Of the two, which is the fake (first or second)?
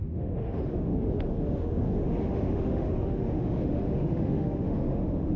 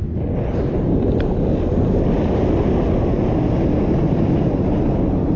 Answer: first